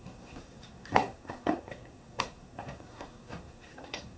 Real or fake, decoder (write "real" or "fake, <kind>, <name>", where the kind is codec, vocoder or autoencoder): fake, codec, SNAC